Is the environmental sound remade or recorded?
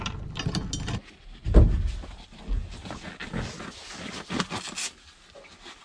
recorded